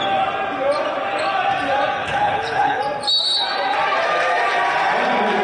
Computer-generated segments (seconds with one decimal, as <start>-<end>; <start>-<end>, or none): 2.0-2.8